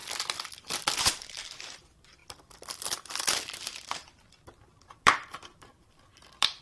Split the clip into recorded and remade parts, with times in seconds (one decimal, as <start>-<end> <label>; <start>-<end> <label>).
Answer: 0.0-1.0 recorded; 1.0-6.6 remade